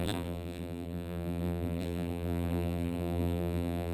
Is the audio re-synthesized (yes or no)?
yes